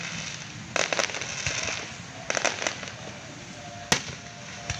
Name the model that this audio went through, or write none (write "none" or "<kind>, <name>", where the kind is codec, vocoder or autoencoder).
none